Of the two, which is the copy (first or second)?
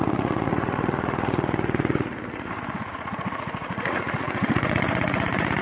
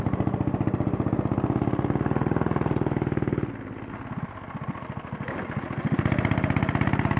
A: first